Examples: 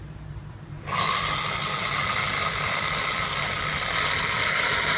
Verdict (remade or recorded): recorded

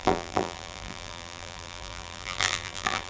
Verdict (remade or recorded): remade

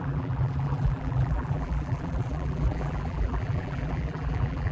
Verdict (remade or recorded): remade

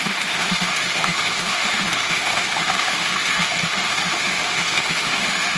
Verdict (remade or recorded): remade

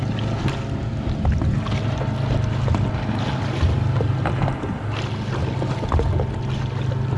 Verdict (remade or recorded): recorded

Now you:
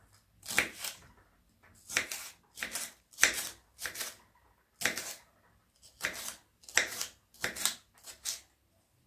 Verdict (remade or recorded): recorded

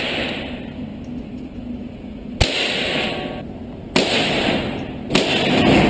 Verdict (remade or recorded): recorded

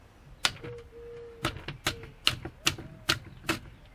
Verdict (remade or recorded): recorded